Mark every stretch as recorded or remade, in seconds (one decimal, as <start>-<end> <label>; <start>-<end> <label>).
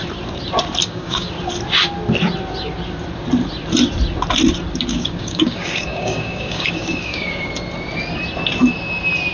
0.0-0.8 recorded; 0.8-1.3 remade; 1.3-4.9 recorded; 4.9-7.5 remade; 7.5-9.3 recorded